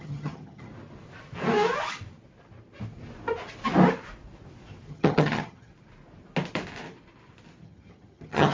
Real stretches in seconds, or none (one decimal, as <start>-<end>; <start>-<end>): 0.7-4.9; 5.7-7.6